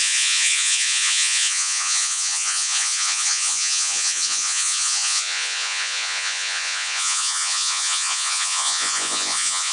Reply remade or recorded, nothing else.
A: remade